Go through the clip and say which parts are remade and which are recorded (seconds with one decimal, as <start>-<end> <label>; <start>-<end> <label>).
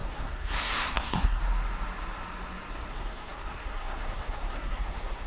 0.0-1.4 remade; 1.4-2.9 recorded; 2.9-5.3 remade